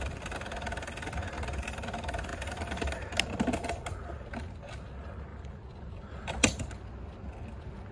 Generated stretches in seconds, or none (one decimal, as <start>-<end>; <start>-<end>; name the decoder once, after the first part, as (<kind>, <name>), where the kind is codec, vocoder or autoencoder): 5.3-6.7 (vocoder, BigVGAN v2)